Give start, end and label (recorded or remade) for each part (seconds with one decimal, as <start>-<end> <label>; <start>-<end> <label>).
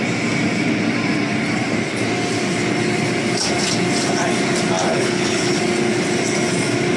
0.0-4.9 recorded; 4.9-5.6 remade; 5.6-7.0 recorded